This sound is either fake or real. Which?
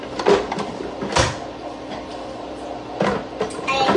real